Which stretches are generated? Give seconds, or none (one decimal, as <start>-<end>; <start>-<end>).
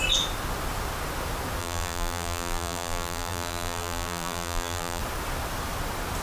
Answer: 1.6-5.0